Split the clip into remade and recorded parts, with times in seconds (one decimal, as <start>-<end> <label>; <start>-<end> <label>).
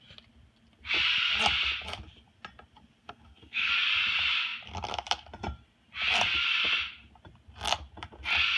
0.0-3.0 recorded; 3.0-3.7 remade; 3.7-8.6 recorded